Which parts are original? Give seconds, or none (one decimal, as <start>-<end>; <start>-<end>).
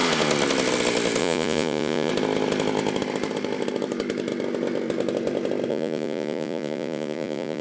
0.0-1.2; 2.1-5.7